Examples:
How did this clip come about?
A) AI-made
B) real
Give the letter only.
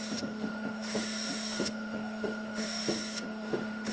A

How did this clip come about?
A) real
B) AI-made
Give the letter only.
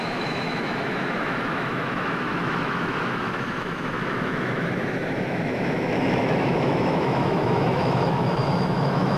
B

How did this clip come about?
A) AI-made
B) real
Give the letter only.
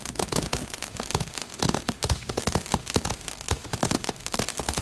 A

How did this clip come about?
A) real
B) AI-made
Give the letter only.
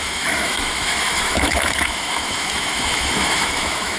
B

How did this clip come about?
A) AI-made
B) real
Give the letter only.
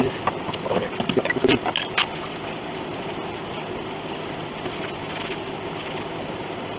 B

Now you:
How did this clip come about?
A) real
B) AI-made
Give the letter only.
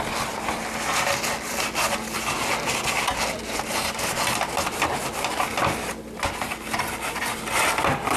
A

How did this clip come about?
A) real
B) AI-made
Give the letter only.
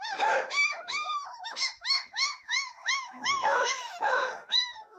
B